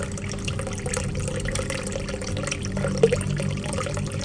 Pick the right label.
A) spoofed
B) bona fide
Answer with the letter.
B